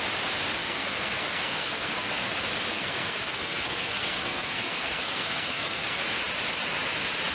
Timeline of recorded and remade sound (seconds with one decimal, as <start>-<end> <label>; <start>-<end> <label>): 0.0-0.6 recorded; 0.6-2.3 remade; 2.3-2.7 recorded; 2.7-6.0 remade; 6.0-7.3 recorded